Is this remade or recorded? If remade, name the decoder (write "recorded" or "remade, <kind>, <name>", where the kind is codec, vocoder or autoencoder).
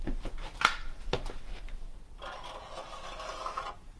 recorded